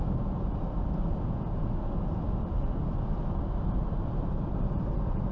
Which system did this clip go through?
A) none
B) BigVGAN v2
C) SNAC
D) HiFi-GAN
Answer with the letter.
A